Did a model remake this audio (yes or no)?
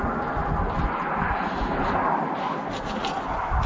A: no